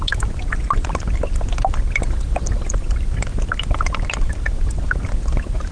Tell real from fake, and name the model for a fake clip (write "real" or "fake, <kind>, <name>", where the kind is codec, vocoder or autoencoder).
real